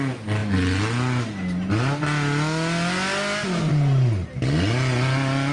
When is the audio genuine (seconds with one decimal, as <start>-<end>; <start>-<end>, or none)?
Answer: 0.0-5.5